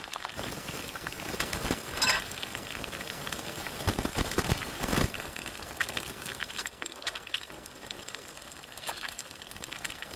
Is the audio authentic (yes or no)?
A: no